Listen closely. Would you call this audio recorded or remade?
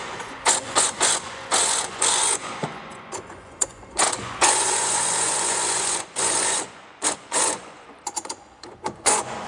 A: remade